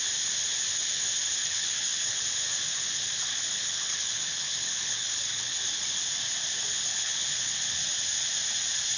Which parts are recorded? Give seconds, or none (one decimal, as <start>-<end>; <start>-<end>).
0.0-1.4; 2.2-3.3; 5.6-6.8; 7.5-9.0